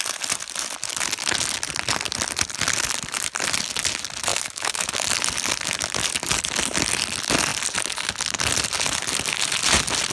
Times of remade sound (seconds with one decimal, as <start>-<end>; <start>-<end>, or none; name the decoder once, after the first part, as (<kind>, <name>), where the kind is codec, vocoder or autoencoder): 4.3-4.9 (autoencoder, DAC-VAE)